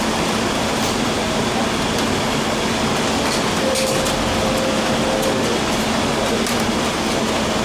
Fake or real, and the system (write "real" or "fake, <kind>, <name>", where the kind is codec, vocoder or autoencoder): real